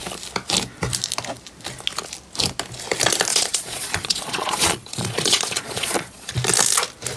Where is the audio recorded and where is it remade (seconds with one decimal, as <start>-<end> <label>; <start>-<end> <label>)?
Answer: 0.0-3.3 recorded; 3.3-6.3 remade; 6.3-7.2 recorded